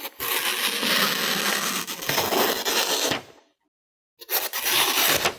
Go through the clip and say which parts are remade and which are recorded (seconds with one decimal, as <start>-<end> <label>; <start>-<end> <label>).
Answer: 0.0-5.4 recorded